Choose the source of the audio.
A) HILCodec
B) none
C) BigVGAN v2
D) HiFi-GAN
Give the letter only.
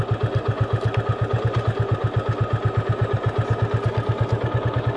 B